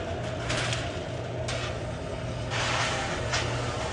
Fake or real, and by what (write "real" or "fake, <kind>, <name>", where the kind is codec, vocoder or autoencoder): real